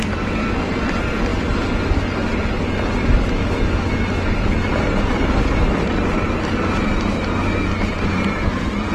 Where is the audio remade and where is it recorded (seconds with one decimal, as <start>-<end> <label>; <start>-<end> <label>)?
0.0-8.9 recorded